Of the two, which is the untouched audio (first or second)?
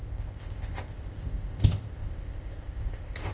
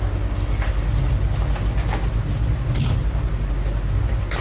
second